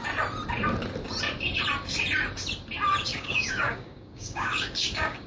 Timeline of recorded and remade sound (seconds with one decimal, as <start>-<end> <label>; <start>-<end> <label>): 0.0-3.1 recorded; 3.1-5.3 remade